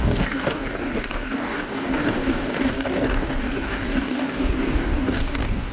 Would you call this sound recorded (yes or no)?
no